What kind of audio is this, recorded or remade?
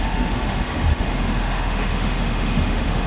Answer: remade